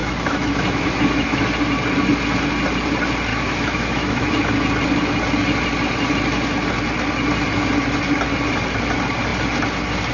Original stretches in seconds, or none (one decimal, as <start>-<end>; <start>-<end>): 1.4-3.3; 4.5-10.1